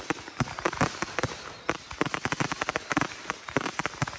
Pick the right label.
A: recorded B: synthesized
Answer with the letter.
A